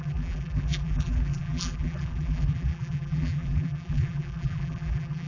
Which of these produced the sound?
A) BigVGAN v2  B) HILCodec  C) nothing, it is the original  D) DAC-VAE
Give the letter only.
A